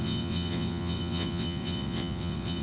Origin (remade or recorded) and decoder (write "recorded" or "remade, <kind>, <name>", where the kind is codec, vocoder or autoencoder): remade, vocoder, WaveNeXt